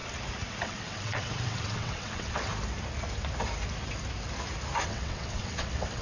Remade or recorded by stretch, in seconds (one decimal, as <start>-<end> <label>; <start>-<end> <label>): 0.0-0.6 recorded; 0.6-2.5 remade; 2.5-4.8 recorded; 4.8-6.0 remade